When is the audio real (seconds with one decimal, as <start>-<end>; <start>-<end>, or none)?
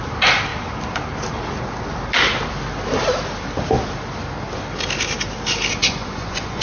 0.0-5.8